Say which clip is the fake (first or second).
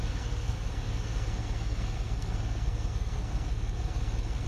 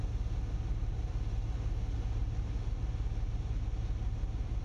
first